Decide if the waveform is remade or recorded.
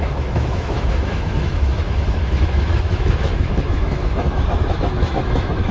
remade